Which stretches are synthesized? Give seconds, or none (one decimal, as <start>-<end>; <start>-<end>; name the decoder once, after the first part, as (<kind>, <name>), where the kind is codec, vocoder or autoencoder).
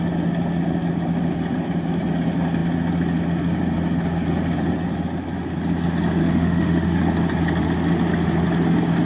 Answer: 6.2-7.0 (autoencoder, DAC-VAE)